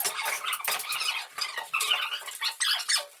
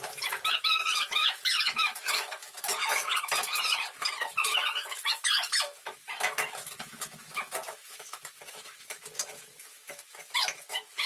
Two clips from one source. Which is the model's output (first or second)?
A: second